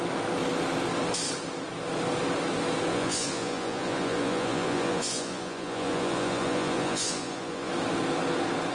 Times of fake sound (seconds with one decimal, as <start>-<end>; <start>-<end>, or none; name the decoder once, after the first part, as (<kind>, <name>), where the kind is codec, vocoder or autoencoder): 2.9-7.7 (vocoder, Vocos)